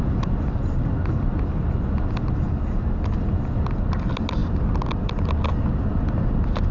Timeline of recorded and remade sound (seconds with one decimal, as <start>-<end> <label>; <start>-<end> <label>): 0.0-6.7 recorded